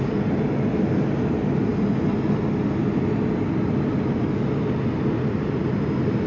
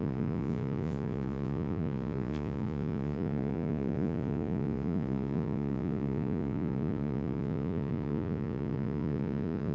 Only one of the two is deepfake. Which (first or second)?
second